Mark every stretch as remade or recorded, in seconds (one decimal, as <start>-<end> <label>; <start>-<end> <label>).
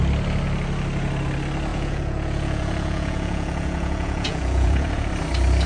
0.0-1.7 recorded; 1.7-5.1 remade; 5.1-5.7 recorded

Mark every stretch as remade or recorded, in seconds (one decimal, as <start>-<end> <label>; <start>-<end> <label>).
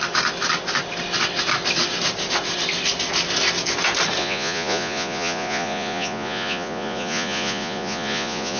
0.0-4.2 recorded; 4.2-8.6 remade